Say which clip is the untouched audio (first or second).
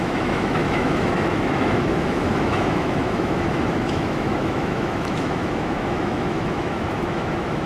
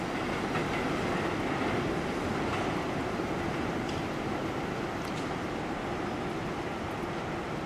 second